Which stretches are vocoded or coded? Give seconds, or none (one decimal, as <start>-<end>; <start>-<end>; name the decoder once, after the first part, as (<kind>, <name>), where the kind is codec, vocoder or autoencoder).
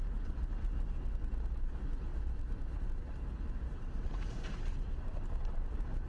2.1-6.1 (vocoder, BigVGAN v2)